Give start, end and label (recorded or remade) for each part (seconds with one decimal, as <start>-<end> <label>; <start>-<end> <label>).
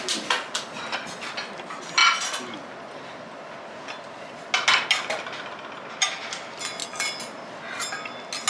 0.0-8.5 recorded